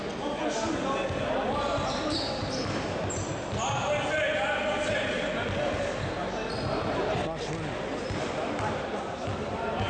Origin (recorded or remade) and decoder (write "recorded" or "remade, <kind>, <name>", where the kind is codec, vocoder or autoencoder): recorded